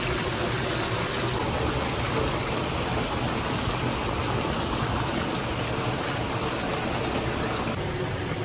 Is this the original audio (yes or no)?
yes